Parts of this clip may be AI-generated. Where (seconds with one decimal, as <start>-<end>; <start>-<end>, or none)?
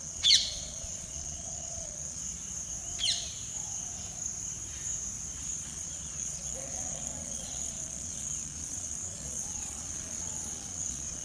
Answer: 0.0-2.2; 5.4-11.2